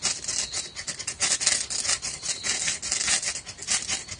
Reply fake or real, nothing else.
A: real